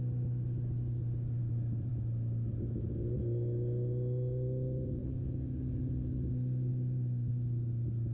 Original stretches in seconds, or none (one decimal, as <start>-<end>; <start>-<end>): 0.0-1.4; 1.9-6.7; 7.3-8.1